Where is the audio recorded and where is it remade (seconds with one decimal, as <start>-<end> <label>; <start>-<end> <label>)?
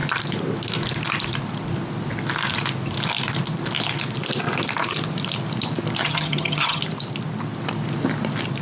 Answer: 0.0-6.0 recorded; 6.0-6.8 remade; 6.8-8.6 recorded